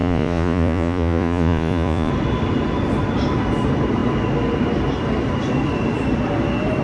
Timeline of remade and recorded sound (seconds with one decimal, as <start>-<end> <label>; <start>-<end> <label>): 0.0-2.1 remade; 2.1-6.8 recorded